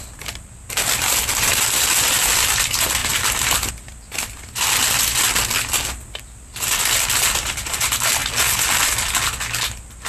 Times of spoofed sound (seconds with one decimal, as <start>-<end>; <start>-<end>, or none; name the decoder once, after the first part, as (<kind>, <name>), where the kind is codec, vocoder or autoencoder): none